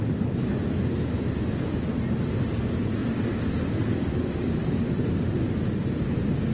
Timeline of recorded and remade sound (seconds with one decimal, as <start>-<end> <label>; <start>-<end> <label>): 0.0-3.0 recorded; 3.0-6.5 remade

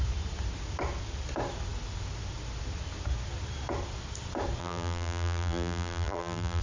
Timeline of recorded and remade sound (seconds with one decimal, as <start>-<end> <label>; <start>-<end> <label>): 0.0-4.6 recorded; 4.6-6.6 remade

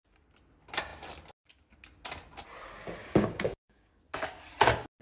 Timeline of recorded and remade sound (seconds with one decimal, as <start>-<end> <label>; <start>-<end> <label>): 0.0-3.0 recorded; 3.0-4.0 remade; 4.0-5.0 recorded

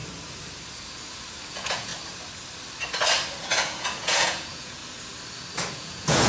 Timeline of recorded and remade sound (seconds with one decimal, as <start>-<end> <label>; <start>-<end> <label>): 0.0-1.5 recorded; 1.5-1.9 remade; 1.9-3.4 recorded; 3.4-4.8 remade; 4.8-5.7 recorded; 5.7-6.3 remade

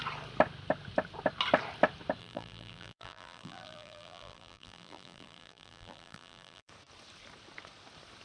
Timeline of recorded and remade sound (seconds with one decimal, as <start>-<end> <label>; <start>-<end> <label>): 0.0-2.2 recorded; 2.2-6.7 remade; 6.7-8.2 recorded